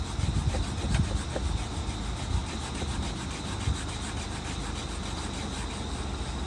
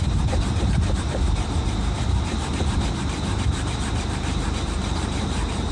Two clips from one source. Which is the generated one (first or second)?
second